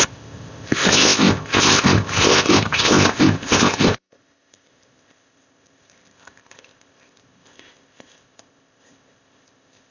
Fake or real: fake